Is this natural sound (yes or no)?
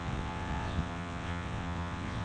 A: no